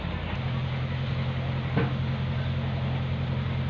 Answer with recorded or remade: recorded